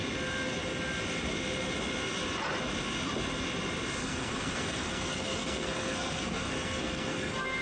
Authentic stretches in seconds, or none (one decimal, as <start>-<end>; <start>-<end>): 0.0-4.0